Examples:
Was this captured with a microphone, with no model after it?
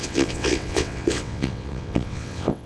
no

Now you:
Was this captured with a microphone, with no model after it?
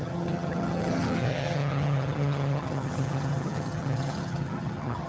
no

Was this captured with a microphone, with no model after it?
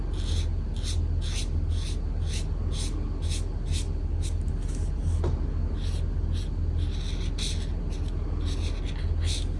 yes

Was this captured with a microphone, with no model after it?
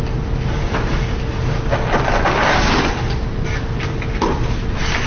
yes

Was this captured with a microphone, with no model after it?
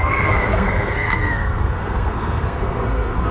no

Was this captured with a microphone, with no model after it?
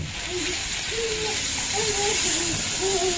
yes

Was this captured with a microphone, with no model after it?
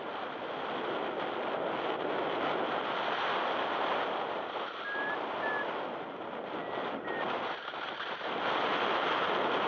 yes